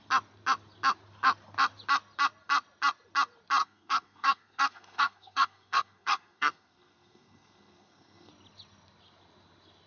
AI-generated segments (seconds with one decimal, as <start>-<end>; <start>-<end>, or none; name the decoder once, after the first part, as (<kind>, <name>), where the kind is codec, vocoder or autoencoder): 3.6-8.3 (codec, SNAC)

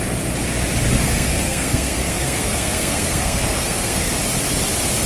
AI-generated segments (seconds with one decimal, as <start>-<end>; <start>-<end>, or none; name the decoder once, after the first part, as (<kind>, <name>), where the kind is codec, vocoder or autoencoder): 1.0-4.1 (codec, SNAC)

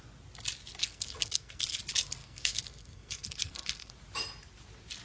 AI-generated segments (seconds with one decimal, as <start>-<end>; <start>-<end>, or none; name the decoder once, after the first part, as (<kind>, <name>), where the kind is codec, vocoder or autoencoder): 0.8-1.8 (codec, SNAC); 2.2-3.9